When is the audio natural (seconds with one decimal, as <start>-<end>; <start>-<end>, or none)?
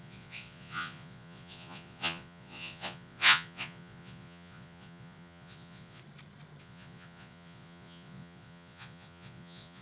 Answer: 6.0-6.6